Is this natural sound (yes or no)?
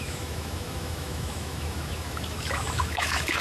no